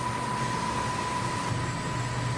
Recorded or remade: recorded